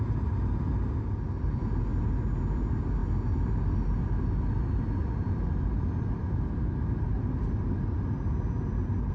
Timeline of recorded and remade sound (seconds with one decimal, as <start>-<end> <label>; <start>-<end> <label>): 0.0-9.1 recorded

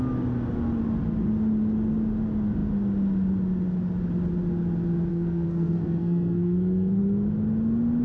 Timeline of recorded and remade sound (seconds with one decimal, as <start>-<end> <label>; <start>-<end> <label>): 0.0-5.1 recorded; 5.1-7.0 remade; 7.0-8.0 recorded